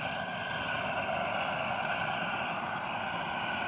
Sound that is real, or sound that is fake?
real